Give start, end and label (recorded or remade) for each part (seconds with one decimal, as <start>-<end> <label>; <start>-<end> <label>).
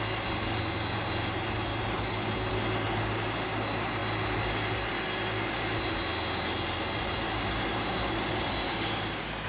0.0-9.5 recorded